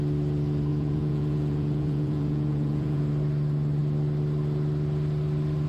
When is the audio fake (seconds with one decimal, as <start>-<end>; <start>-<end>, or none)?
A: 0.7-3.0